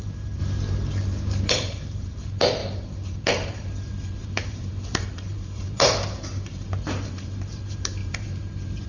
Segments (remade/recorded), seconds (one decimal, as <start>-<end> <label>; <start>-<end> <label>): 0.0-0.4 remade; 0.4-1.5 recorded; 1.5-8.9 remade